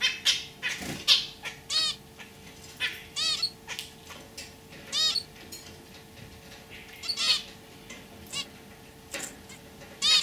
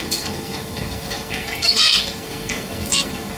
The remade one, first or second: second